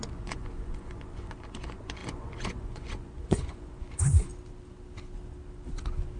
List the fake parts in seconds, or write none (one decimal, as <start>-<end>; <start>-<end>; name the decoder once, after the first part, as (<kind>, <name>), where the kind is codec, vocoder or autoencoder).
0.0-4.3 (vocoder, Vocos)